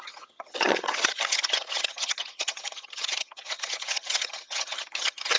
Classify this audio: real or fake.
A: fake